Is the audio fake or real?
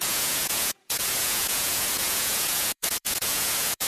fake